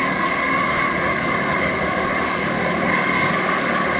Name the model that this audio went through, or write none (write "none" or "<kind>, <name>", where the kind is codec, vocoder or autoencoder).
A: codec, DAC